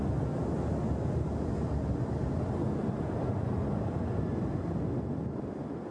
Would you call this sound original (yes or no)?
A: yes